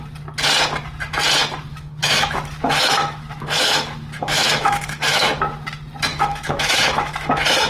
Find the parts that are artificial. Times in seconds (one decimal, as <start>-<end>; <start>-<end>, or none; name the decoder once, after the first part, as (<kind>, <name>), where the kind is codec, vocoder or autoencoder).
1.7-5.3 (autoencoder, DAC-VAE); 6.1-7.7